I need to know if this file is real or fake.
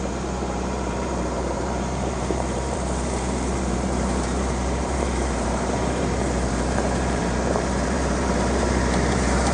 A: fake